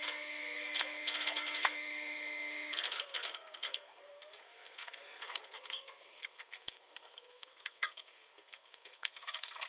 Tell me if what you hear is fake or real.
fake